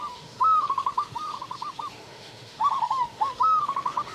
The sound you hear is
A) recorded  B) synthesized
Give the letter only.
B